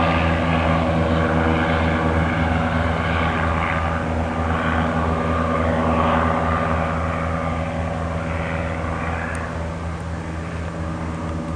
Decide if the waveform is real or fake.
real